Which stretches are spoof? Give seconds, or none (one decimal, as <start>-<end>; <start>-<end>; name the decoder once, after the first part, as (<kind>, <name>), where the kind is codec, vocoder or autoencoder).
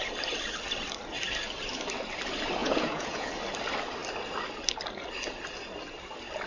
2.6-3.3 (vocoder, Vocos)